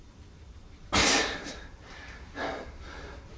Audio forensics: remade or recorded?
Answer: recorded